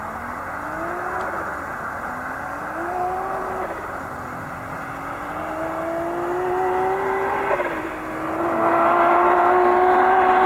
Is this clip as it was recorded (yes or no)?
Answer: yes